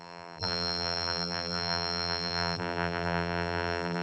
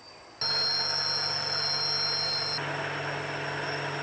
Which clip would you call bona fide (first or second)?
second